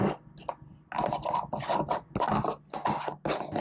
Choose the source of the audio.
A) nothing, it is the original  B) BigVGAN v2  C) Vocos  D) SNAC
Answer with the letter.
A